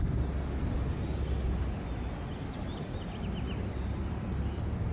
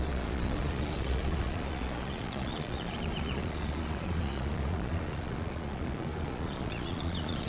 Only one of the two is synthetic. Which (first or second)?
second